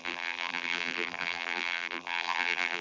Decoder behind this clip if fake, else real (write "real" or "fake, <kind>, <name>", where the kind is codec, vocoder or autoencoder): fake, vocoder, BigVGAN v2